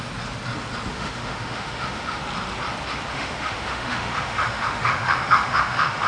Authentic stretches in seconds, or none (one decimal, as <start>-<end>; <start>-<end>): 0.0-0.9; 2.2-3.1